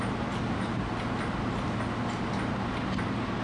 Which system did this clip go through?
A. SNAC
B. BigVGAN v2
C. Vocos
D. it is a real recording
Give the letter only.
D